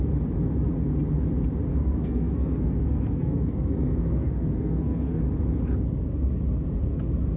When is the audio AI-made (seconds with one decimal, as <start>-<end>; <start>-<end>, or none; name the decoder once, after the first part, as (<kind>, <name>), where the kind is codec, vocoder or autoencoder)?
1.7-5.2 (codec, SNAC)